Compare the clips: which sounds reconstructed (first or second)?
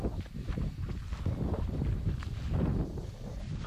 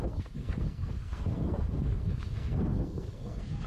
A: second